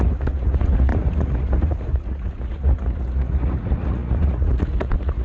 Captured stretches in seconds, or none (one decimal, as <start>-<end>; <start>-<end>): none